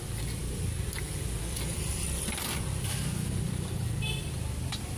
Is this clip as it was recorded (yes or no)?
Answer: no